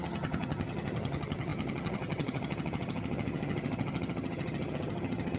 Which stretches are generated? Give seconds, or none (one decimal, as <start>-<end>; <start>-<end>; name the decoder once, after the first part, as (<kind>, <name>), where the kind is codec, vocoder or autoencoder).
0.0-5.4 (vocoder, HiFi-GAN)